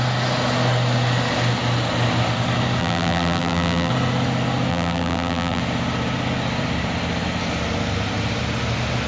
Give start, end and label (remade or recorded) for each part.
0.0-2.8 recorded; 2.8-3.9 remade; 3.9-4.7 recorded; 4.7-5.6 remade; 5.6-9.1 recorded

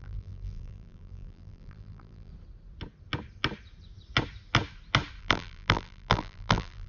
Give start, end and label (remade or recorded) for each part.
0.0-2.3 remade; 2.3-5.2 recorded; 5.2-6.9 remade

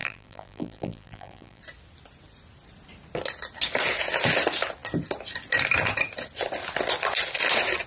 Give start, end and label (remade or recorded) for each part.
0.0-1.6 remade; 1.6-7.9 recorded

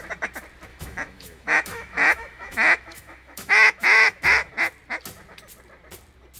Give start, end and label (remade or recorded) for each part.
0.0-0.7 recorded; 0.7-4.5 remade; 4.5-6.4 recorded